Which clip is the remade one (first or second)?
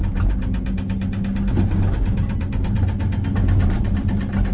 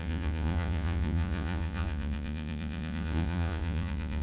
second